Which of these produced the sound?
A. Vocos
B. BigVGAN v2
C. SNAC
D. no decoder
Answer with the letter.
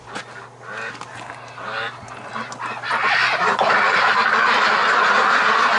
D